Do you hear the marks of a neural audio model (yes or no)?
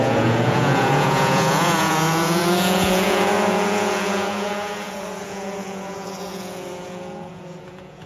yes